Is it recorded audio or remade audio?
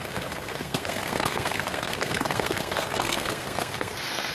remade